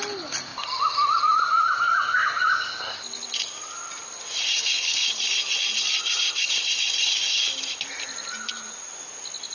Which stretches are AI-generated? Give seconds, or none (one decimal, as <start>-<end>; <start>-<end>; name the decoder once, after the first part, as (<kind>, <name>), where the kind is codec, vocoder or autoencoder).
5.0-5.6 (vocoder, Vocos)